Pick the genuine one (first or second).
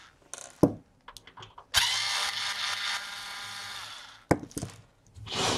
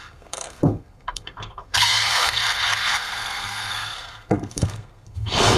first